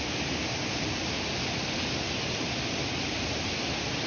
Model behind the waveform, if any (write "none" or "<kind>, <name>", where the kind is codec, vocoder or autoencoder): none